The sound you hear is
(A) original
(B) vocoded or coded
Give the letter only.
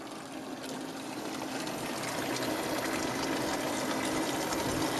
B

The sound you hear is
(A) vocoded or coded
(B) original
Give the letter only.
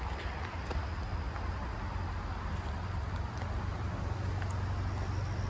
B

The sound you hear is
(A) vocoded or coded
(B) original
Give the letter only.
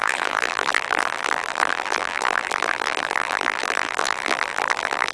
A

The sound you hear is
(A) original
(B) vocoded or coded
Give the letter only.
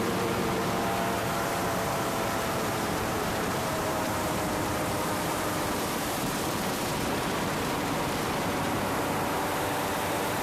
B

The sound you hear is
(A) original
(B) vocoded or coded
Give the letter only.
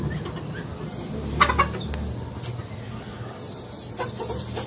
A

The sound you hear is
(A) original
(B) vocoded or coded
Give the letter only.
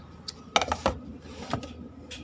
A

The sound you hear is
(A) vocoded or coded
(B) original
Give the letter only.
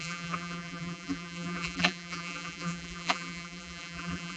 A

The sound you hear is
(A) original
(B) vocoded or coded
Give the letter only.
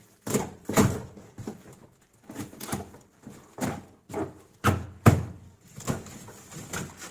A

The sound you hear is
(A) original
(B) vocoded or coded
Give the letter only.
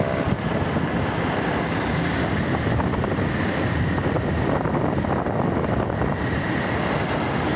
A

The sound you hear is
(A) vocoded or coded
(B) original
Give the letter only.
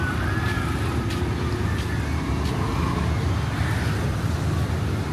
B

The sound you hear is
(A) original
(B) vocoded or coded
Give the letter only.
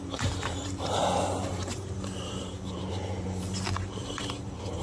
B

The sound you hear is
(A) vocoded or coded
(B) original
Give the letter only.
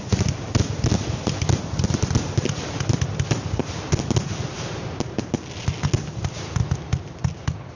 A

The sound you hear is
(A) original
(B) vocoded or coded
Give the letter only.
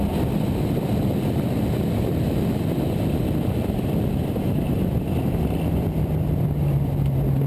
B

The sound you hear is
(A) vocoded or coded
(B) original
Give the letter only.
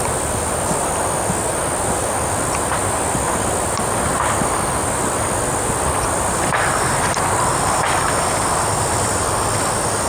B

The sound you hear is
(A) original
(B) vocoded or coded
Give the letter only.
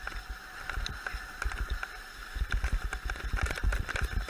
B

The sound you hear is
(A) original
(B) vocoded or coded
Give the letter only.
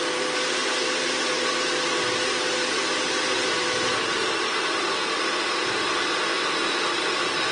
A